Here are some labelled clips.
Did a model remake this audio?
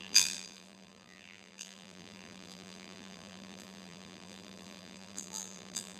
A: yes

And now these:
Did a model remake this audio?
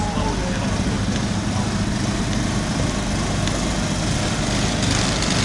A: no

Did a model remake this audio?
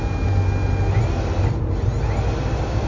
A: no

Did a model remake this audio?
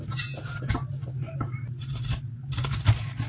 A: no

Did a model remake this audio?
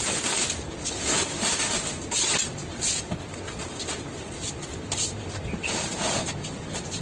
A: no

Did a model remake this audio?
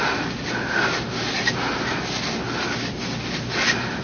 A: no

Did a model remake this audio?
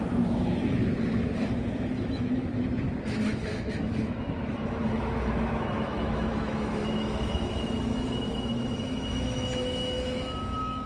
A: yes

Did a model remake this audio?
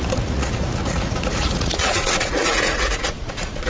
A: yes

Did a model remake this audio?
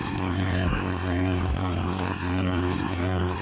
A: yes